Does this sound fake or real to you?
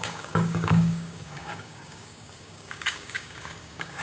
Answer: fake